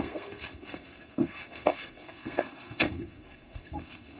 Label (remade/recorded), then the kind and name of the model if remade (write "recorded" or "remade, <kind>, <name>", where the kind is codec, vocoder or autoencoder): remade, codec, SNAC